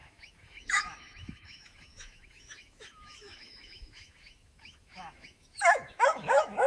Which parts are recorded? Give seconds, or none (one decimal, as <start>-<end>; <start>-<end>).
none

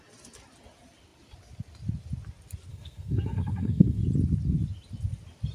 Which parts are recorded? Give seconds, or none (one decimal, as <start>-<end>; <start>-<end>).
0.0-2.7; 4.0-5.5

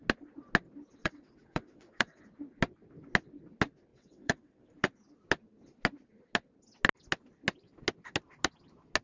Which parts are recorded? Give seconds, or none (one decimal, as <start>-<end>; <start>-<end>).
0.0-1.0; 2.2-3.9; 4.6-9.0

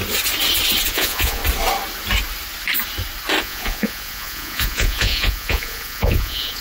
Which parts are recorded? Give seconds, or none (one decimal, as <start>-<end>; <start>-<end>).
0.0-0.9; 1.4-3.4

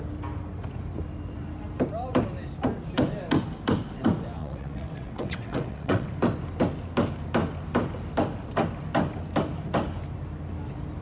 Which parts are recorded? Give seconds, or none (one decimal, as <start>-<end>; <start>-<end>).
0.0-4.4; 6.1-11.0

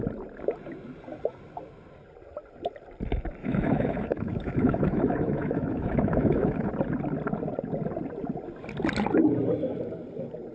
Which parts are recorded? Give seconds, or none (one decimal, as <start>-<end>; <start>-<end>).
0.0-3.4; 6.7-10.5

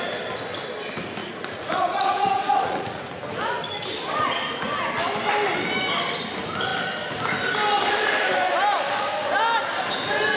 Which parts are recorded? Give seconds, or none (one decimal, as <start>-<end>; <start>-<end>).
0.0-1.2; 3.1-10.4